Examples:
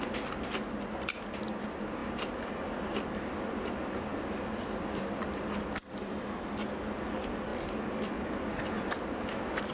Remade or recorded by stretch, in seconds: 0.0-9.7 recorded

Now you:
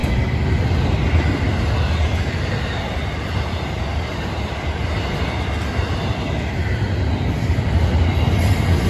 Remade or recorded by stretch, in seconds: 0.0-8.9 recorded

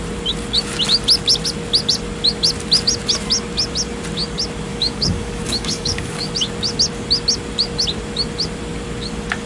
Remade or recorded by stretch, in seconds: 0.0-4.7 recorded; 4.7-6.3 remade; 6.3-9.5 recorded

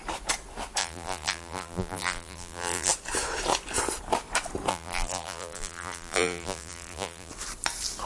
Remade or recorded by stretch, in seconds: 0.0-0.8 recorded; 0.8-2.9 remade; 2.9-4.7 recorded; 4.7-7.3 remade; 7.3-8.1 recorded

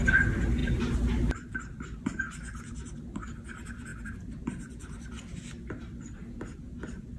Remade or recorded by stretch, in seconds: 0.0-3.9 recorded; 3.9-5.7 remade; 5.7-7.2 recorded

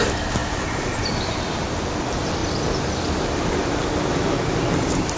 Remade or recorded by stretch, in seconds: 0.0-5.2 recorded

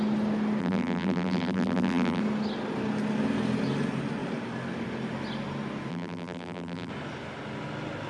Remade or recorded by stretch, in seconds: 0.0-0.6 recorded; 0.6-2.2 remade; 2.2-5.9 recorded; 5.9-6.9 remade; 6.9-8.1 recorded

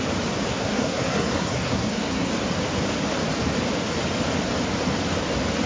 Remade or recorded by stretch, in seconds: 0.0-0.5 recorded; 0.5-2.3 remade; 2.3-5.7 recorded